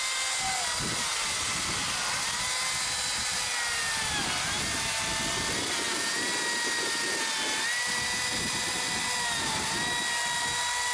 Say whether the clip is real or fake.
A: real